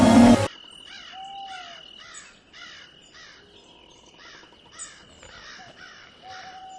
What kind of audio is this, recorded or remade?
recorded